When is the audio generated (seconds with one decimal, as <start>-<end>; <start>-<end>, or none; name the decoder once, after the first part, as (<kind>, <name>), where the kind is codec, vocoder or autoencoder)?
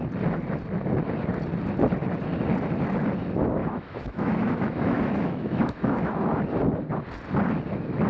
3.6-6.1 (autoencoder, DAC-VAE)